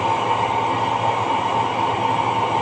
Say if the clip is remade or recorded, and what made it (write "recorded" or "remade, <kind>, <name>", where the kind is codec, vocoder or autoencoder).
recorded